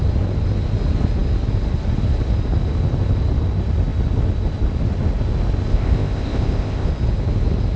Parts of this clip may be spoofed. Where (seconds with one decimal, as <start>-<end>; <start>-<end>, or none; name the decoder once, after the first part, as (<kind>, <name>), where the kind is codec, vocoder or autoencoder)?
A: 5.7-6.9 (codec, ZipCodec)